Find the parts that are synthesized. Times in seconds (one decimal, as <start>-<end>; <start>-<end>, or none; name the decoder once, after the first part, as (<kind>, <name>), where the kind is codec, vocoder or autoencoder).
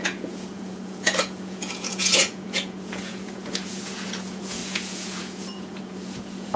0.0-6.6 (vocoder, Vocos)